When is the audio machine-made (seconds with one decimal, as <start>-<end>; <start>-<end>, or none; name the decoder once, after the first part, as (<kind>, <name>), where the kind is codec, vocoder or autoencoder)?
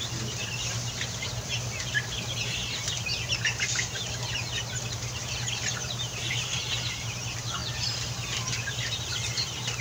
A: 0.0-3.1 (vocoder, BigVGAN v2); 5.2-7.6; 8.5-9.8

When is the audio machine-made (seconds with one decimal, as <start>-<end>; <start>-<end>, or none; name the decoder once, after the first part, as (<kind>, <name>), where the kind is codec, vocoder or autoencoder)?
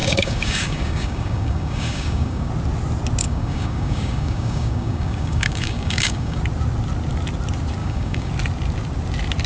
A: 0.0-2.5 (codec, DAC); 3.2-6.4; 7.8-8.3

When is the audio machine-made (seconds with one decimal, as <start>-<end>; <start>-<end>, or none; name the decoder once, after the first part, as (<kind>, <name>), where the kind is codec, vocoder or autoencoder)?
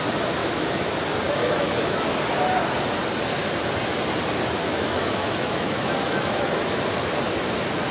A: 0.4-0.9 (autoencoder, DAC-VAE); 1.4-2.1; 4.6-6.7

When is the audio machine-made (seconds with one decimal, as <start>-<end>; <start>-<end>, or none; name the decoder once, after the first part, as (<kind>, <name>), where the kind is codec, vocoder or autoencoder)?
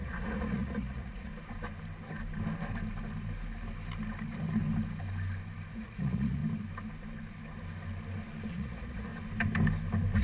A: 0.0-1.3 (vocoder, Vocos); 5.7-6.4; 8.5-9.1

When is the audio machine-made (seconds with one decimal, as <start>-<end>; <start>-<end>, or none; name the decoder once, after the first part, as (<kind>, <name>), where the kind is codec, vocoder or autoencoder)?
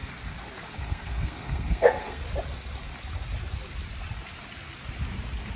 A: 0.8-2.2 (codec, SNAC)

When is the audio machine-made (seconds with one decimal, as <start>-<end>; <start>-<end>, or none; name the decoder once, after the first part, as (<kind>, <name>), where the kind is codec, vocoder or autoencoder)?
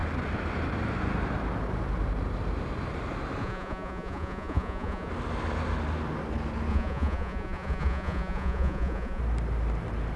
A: 3.4-5.1 (vocoder, Vocos); 6.7-9.2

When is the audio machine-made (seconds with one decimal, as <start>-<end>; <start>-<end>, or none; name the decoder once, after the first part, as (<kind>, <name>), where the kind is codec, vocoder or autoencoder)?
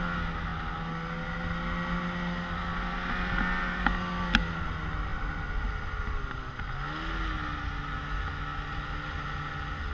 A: none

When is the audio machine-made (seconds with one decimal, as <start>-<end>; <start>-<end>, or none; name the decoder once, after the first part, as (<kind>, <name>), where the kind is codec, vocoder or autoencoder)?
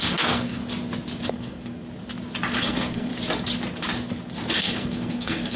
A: 0.0-0.6 (codec, SNAC); 1.3-1.8; 2.6-3.1; 4.6-5.6